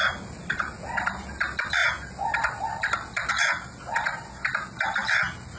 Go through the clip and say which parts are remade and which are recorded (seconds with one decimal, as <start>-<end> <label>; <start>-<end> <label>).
0.0-5.6 recorded